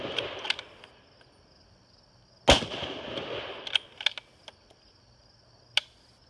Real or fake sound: real